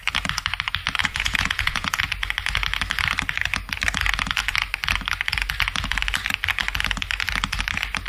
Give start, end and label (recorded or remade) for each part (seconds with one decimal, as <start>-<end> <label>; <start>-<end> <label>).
0.0-1.0 recorded; 1.0-2.0 remade; 2.0-8.1 recorded